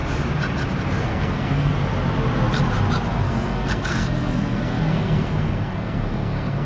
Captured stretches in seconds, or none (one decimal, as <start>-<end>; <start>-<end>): 0.0-1.0; 1.7-3.1